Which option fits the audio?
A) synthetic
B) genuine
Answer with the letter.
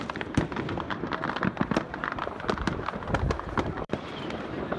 A